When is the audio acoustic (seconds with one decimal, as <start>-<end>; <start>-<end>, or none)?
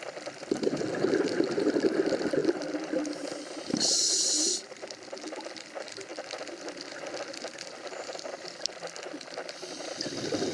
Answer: 0.0-2.4; 3.6-10.5